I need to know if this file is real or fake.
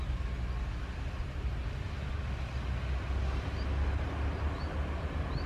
real